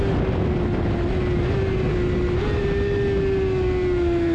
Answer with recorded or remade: recorded